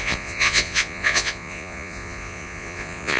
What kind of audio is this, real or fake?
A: fake